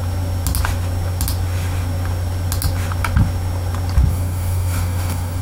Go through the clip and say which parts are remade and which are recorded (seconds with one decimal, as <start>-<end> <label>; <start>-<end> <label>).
0.0-4.1 recorded; 4.1-5.4 remade